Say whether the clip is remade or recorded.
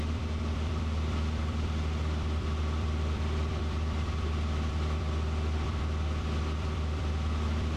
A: remade